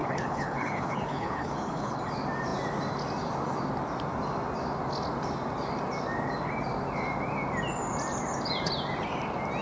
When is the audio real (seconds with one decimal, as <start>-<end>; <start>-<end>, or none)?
2.0-9.6